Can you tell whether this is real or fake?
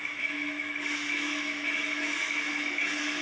fake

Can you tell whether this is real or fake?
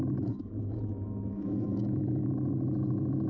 fake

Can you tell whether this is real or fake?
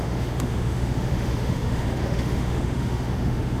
fake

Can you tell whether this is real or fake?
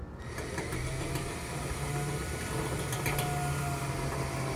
real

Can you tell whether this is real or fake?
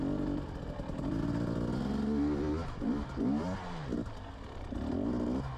real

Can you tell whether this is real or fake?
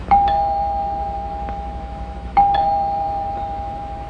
fake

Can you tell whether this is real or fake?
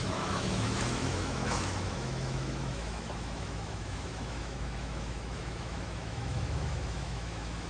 fake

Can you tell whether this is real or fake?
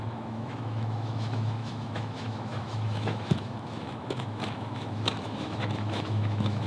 fake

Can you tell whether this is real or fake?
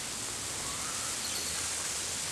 real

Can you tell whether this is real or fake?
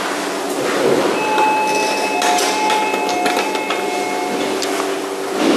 real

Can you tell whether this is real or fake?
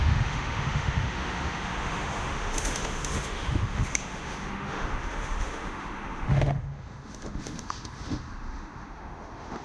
fake